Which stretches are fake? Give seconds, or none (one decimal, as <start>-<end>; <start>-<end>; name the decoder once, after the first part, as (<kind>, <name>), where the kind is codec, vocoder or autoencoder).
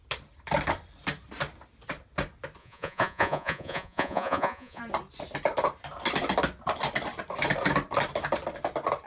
2.6-4.8 (vocoder, Vocos)